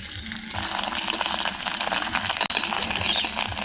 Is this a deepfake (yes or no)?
no